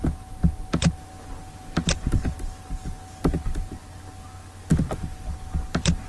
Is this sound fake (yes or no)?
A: no